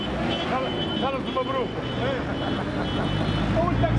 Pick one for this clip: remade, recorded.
recorded